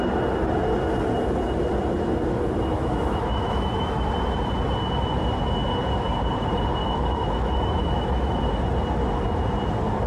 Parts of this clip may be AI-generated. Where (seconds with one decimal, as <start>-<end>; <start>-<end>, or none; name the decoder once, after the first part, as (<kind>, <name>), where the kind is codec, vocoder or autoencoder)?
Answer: 2.7-4.0 (autoencoder, DAC-VAE); 6.8-8.4